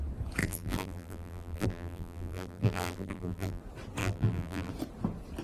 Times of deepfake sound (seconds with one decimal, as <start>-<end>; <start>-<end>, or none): 0.4-3.6; 4.0-4.7